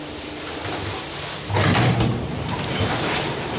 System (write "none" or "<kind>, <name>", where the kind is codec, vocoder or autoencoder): none